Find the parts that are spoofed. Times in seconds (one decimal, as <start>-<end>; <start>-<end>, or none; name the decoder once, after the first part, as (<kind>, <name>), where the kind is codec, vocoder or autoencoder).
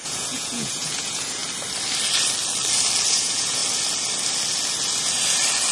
0.0-1.4 (vocoder, Vocos); 3.1-3.6